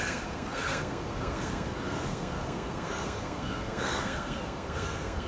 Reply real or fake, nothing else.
fake